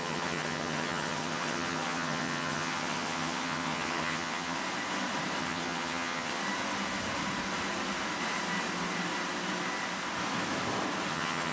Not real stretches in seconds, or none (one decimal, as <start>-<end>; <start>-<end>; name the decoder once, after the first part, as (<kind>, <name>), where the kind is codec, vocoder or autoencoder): 0.0-4.6 (vocoder, HiFi-GAN); 5.4-6.4; 11.1-11.5